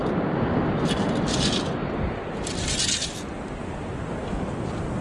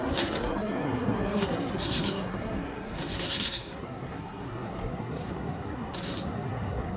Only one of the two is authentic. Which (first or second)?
first